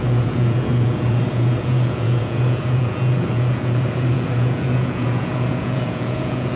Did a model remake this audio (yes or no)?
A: yes